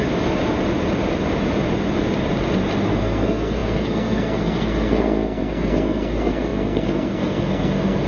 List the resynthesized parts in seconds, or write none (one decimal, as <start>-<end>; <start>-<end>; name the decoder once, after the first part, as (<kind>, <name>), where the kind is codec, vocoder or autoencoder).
2.9-8.1 (codec, SNAC)